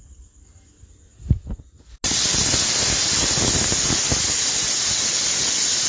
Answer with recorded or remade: recorded